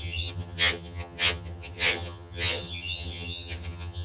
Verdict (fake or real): fake